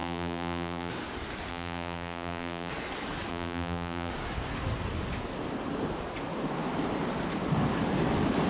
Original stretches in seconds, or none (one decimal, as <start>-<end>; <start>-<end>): 0.9-1.5; 2.7-3.3; 4.1-8.5